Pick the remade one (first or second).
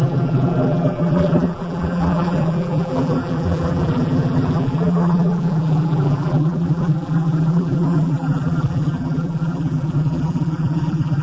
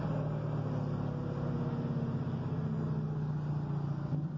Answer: first